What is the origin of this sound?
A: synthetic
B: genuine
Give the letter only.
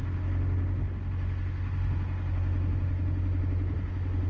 B